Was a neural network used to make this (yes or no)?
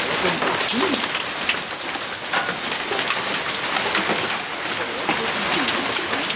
no